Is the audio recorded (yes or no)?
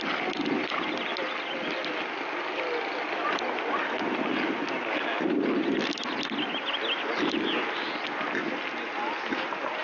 yes